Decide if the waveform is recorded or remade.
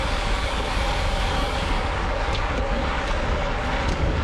remade